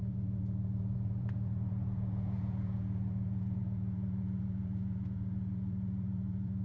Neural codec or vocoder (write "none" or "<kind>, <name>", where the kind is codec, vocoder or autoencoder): vocoder, Vocos